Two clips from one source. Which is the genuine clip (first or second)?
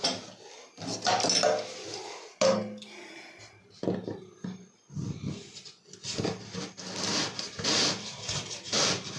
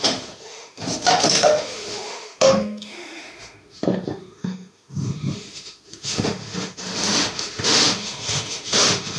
first